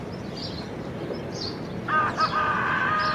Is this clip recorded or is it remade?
recorded